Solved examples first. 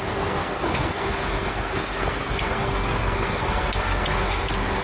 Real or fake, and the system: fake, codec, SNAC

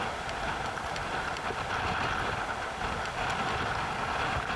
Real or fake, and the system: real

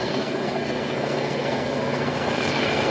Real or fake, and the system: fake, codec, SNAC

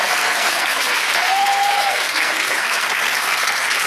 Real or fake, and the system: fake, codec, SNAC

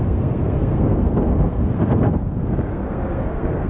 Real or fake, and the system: fake, codec, SNAC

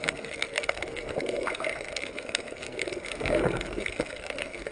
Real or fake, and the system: fake, codec, SNAC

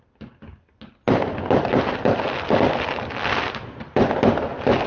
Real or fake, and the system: real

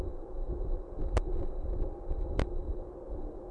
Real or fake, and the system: real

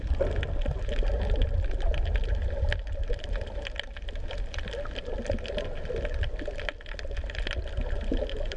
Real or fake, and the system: real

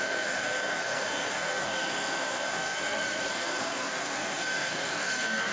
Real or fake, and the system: fake, codec, SNAC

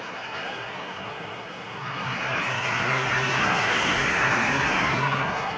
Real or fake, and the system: fake, codec, SNAC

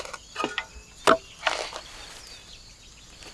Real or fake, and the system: real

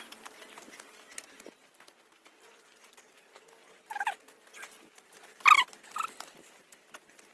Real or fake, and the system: real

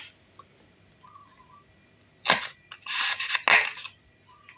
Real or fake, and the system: real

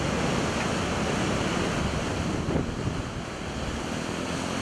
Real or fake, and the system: real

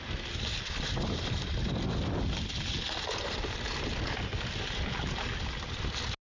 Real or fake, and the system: real